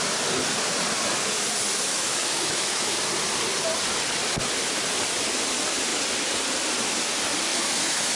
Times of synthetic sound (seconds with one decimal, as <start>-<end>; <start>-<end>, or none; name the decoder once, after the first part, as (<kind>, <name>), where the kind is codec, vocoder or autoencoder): 1.9-3.0 (autoencoder, DAC-VAE); 7.5-8.2